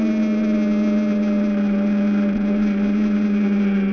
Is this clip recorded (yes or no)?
yes